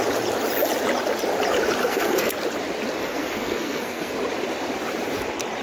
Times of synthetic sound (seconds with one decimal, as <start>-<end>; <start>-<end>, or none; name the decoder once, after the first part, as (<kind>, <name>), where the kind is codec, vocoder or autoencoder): 1.8-2.3 (codec, SNAC); 3.0-4.1